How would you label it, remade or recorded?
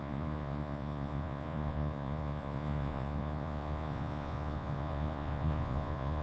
remade